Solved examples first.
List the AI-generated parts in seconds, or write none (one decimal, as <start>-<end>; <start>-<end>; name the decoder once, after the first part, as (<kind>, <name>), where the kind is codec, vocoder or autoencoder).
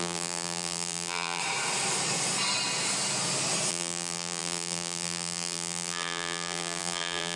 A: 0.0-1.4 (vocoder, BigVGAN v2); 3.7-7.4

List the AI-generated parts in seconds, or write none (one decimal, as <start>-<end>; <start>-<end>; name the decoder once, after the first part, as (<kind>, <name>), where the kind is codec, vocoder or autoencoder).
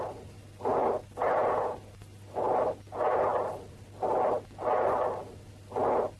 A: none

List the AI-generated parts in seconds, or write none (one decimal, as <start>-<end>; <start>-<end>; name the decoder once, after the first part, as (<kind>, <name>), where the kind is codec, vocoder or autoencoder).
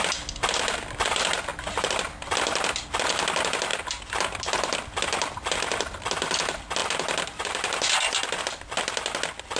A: 6.8-8.4 (vocoder, BigVGAN v2)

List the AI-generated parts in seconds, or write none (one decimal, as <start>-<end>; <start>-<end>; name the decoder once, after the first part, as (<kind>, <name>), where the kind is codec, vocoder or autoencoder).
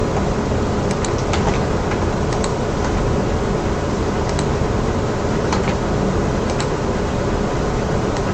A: 1.9-2.5 (vocoder, BigVGAN v2); 5.0-8.3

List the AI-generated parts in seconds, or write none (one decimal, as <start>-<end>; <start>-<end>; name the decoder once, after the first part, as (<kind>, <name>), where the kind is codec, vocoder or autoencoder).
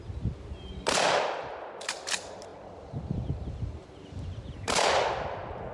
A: none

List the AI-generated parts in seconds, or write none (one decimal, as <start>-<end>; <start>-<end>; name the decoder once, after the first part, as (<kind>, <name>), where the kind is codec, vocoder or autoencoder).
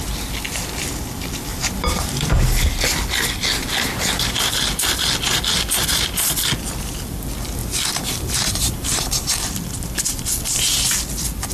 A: 1.5-2.1 (vocoder, BigVGAN v2); 7.6-9.3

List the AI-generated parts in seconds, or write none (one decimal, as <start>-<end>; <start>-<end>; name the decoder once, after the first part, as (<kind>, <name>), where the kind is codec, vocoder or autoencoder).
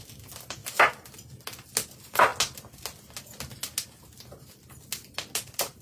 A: none